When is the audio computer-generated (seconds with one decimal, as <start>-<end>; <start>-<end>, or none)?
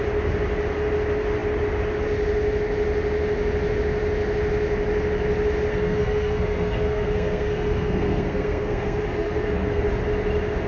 5.7-9.8